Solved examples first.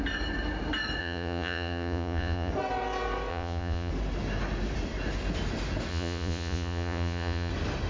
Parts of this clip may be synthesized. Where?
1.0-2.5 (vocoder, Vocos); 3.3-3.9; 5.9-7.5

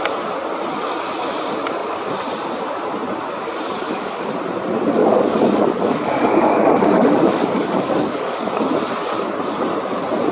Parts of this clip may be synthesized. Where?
3.8-4.3 (codec, DAC); 5.0-8.5

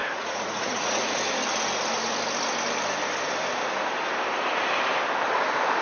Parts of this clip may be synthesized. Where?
0.0-1.2 (vocoder, Vocos)